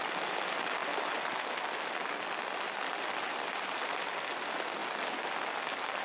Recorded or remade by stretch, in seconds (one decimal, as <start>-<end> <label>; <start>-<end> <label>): 0.0-6.0 recorded